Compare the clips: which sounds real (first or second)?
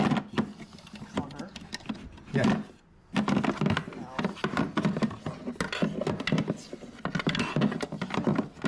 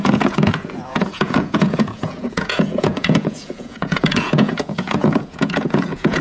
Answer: first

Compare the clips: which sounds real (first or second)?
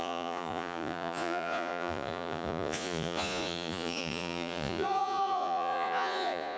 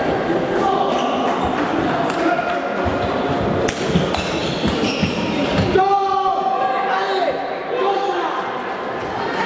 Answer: second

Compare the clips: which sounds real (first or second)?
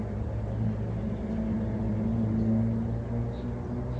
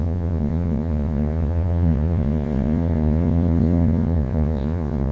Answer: first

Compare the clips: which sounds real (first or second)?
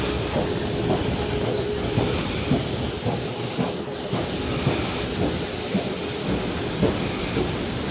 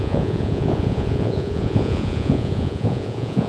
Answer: first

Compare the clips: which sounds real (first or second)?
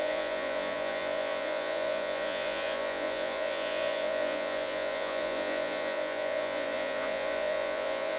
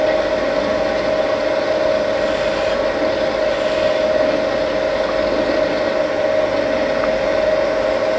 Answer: second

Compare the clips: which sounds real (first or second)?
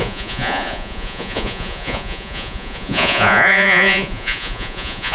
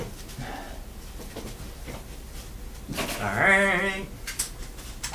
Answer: second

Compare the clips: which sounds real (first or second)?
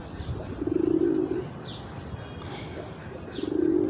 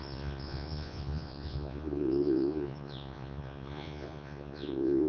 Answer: first